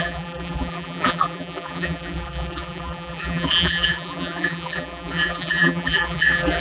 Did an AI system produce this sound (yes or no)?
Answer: yes